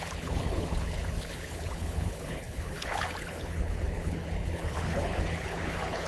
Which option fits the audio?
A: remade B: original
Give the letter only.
A